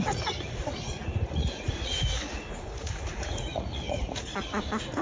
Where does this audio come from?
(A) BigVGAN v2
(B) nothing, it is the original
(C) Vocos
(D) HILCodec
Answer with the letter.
C